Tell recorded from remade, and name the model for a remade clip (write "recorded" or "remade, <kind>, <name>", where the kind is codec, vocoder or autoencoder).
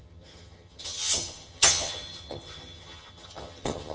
remade, vocoder, HiFi-GAN